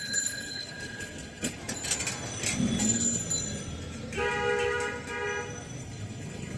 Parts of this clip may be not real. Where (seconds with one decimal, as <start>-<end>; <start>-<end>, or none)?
0.0-1.6; 2.8-3.2; 5.8-6.6